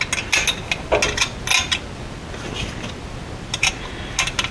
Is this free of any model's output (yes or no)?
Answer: yes